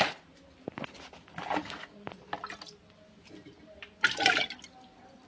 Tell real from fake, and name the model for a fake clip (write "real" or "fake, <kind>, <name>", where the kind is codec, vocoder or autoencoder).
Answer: real